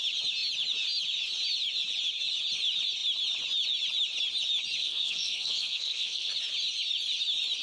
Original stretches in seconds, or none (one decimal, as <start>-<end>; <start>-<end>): 0.0-4.8; 6.3-7.6